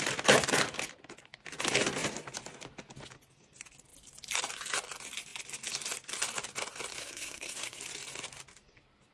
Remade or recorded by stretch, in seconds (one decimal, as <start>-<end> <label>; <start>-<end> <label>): 0.0-7.0 recorded; 7.0-7.8 remade; 7.8-9.1 recorded